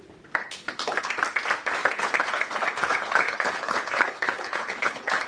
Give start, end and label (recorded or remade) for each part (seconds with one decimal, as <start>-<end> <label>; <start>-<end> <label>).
0.0-0.4 recorded; 0.4-1.1 remade; 1.1-1.8 recorded; 1.8-5.3 remade